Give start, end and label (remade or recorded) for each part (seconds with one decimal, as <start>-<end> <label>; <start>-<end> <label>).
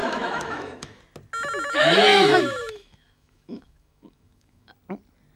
0.0-1.0 remade; 1.0-2.1 recorded; 2.1-4.7 remade; 4.7-5.4 recorded